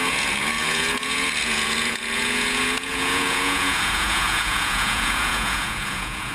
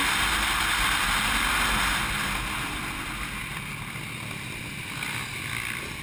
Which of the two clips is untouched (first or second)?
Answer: second